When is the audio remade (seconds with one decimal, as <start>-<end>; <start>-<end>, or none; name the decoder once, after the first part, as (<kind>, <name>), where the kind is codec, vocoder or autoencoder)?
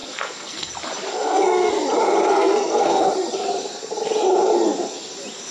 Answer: 0.0-0.7 (codec, SNAC); 1.1-1.7; 2.2-3.1